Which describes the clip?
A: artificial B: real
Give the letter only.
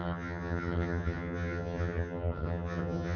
A